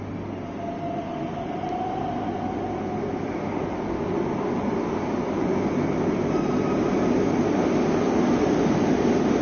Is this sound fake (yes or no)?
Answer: no